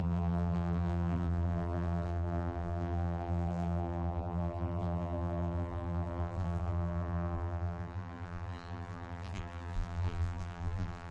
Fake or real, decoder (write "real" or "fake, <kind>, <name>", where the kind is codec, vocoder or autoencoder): fake, vocoder, BigVGAN v2